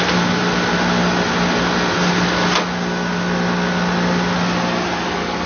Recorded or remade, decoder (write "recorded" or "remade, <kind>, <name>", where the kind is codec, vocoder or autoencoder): recorded